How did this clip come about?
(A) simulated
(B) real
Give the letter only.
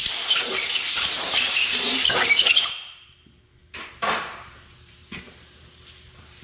A